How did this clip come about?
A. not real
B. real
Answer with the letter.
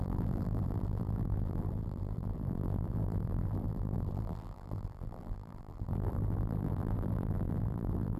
A